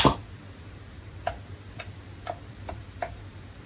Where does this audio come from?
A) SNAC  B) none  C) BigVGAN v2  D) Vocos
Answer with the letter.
C